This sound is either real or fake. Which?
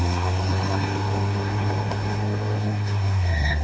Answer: fake